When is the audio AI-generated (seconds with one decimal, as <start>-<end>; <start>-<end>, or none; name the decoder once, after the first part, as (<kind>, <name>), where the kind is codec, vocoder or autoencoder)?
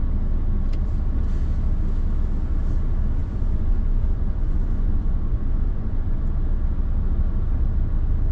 3.2-6.2 (vocoder, Vocos)